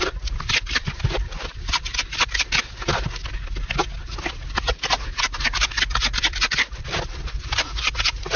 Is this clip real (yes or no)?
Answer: yes